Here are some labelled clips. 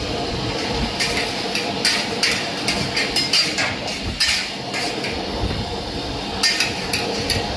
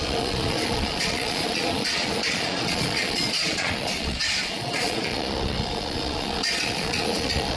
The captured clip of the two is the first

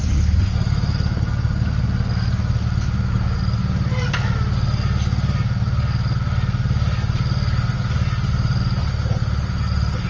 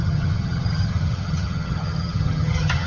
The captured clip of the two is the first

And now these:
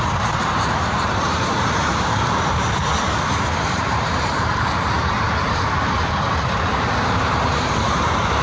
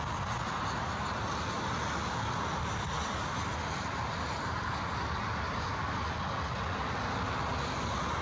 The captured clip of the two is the second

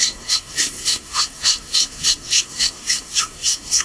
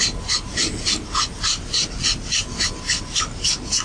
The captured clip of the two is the second